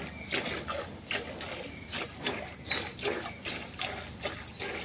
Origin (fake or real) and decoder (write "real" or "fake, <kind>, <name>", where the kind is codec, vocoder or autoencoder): real